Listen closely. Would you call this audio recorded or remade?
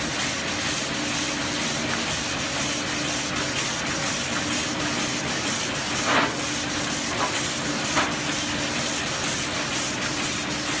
recorded